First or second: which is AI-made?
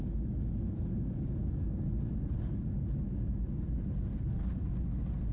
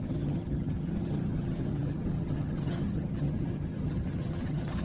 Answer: second